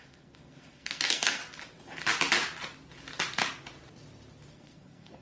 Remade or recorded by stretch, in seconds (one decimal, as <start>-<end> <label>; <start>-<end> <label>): 0.0-1.4 remade; 1.4-4.5 recorded; 4.5-5.2 remade

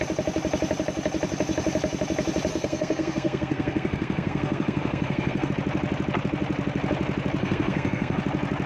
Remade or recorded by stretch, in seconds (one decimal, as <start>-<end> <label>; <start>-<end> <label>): 0.0-2.5 recorded; 2.5-5.5 remade; 5.5-7.4 recorded; 7.4-8.2 remade; 8.2-8.7 recorded

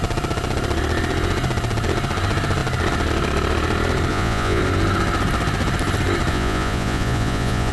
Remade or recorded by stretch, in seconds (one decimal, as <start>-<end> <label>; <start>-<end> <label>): 0.0-4.1 recorded; 4.1-4.6 remade; 4.6-6.3 recorded; 6.3-7.7 remade

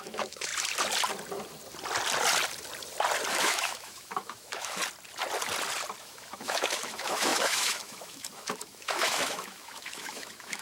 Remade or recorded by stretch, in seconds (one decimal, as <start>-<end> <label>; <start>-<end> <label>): 0.0-0.5 remade; 0.5-3.3 recorded; 3.3-4.8 remade; 4.8-6.0 recorded; 6.0-10.6 remade

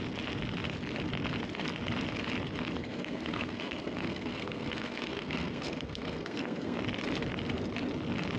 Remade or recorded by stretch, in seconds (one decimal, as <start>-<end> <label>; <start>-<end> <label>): 0.0-2.8 recorded; 2.8-6.8 remade; 6.8-8.4 recorded

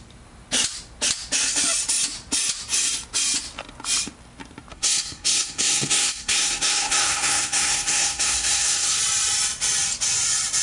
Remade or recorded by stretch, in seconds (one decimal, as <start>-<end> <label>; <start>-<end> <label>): 0.0-4.7 recorded; 4.7-9.0 remade; 9.0-10.6 recorded

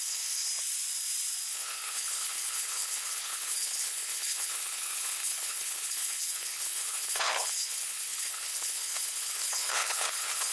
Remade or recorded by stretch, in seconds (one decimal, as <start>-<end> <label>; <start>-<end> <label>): 0.0-0.5 remade; 0.5-1.5 recorded; 1.5-10.5 remade

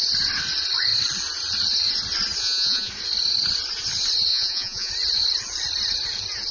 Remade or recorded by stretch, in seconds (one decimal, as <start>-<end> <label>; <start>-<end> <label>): 0.0-2.4 recorded; 2.4-2.9 remade; 2.9-4.3 recorded; 4.3-4.9 remade; 4.9-6.5 recorded